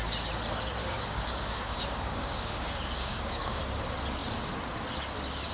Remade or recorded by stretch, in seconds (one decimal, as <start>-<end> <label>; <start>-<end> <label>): 0.0-0.8 recorded; 0.8-3.6 remade; 3.6-5.5 recorded